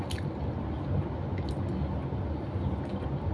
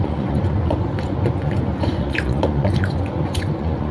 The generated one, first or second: second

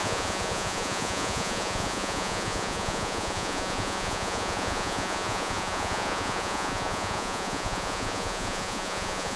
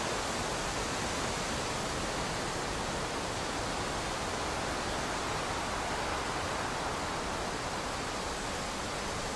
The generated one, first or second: first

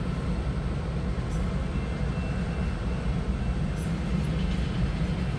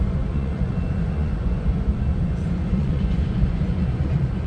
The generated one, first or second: second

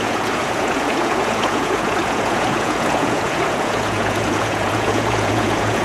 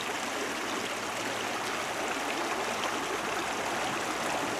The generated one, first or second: first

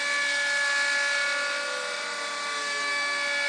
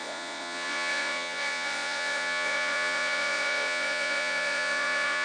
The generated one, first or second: second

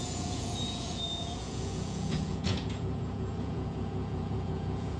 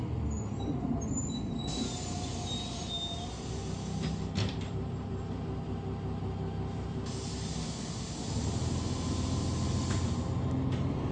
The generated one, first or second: first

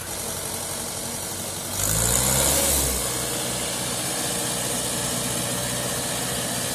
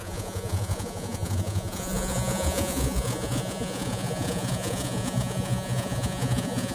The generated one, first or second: second